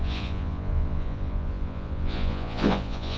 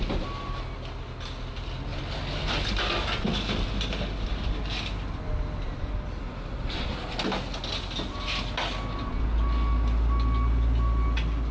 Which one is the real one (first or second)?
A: second